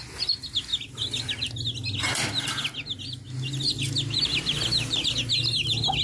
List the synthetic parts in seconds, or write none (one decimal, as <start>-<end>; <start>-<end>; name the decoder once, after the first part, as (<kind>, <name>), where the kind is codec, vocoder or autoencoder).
none